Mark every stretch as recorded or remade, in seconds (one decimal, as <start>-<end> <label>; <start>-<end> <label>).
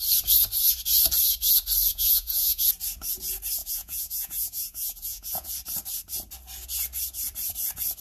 0.0-1.9 recorded; 1.9-2.6 remade; 2.6-3.6 recorded; 3.6-5.5 remade; 5.5-8.0 recorded